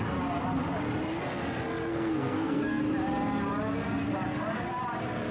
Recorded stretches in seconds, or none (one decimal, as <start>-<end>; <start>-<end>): 0.0-1.9; 2.8-5.3